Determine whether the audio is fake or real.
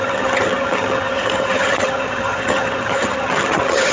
fake